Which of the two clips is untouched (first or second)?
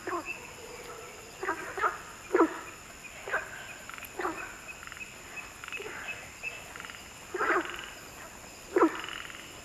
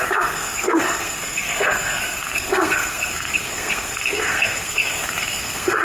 first